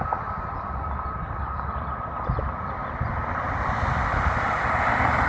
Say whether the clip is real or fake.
real